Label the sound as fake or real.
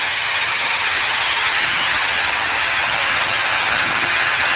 fake